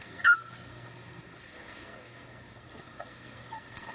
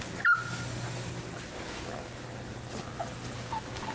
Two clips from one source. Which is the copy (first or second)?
first